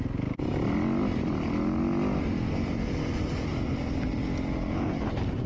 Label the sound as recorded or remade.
recorded